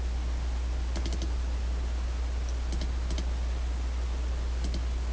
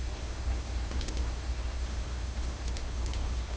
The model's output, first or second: second